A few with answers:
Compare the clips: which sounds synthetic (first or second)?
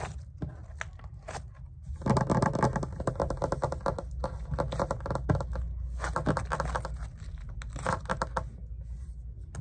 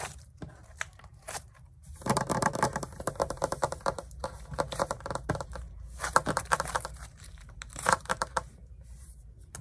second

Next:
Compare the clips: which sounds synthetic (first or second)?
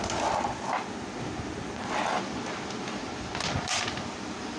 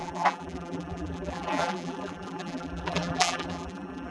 second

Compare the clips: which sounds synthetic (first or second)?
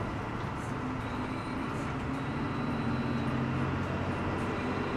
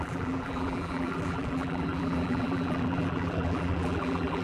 second